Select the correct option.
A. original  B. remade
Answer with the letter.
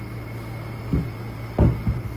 A